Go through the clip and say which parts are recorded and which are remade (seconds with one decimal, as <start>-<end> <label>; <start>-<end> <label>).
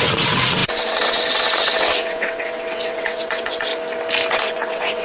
0.0-3.7 remade; 3.7-4.3 recorded; 4.3-5.0 remade